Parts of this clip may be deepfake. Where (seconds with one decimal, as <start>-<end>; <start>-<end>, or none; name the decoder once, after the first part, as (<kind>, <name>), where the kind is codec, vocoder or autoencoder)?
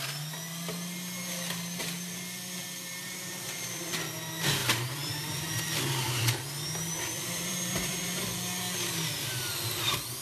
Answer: 1.8-3.9 (vocoder, BigVGAN v2); 4.6-8.1